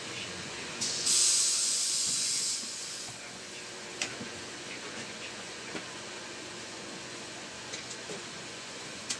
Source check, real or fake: fake